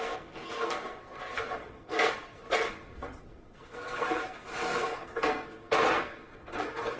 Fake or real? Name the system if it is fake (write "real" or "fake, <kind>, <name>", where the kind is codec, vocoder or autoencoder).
fake, codec, SNAC